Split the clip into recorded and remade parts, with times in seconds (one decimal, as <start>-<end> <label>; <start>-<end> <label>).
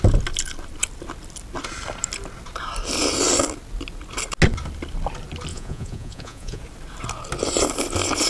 0.0-5.5 recorded; 5.5-6.6 remade; 6.6-8.3 recorded